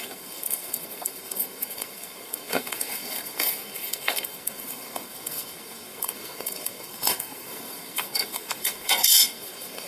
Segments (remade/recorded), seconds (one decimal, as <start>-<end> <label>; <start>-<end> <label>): 0.0-9.9 remade